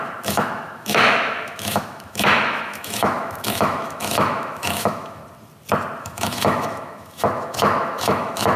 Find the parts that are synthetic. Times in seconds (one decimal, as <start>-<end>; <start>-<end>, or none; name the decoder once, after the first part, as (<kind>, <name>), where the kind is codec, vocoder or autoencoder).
0.0-5.2 (autoencoder, DAC-VAE); 6.0-8.6